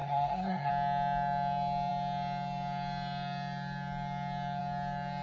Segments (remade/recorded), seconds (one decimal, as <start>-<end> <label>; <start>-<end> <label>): 0.0-0.7 remade; 0.7-5.2 recorded